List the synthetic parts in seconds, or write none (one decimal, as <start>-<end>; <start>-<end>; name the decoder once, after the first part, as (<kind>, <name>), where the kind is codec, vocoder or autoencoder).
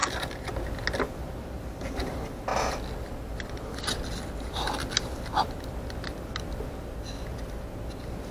0.0-0.5 (vocoder, BigVGAN v2); 2.5-5.8